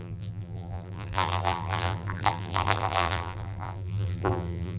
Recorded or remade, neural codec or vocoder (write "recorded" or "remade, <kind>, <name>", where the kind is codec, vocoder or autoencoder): remade, vocoder, BigVGAN v2